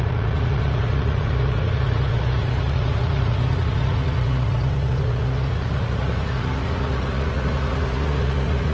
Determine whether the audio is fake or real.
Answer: fake